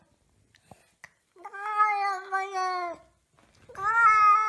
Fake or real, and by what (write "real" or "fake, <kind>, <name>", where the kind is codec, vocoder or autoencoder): real